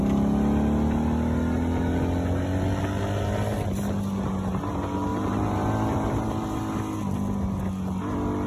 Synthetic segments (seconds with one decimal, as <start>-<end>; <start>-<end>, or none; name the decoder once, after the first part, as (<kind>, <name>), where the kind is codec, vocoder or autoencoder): 5.1-6.6 (vocoder, BigVGAN v2)